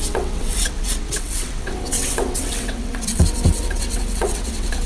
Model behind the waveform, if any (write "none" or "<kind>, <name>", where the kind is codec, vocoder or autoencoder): vocoder, WaveNeXt